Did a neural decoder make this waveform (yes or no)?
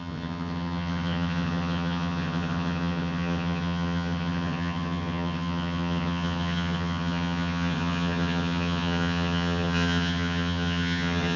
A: yes